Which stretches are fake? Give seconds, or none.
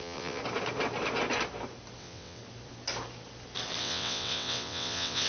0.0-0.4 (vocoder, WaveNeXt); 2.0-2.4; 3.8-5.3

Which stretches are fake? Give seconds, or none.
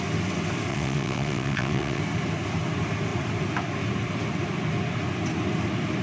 0.7-2.0 (vocoder, WaveNeXt)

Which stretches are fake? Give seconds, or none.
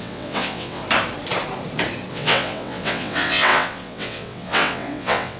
0.0-0.8 (vocoder, WaveNeXt); 2.1-5.4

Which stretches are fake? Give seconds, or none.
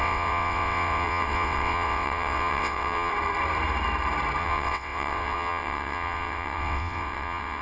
0.0-3.1 (vocoder, WaveNeXt); 4.4-7.6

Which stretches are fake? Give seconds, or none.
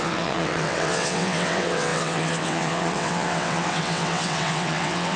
0.0-5.2 (vocoder, WaveNeXt)